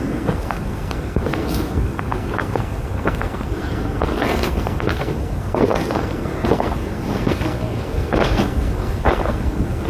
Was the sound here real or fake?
fake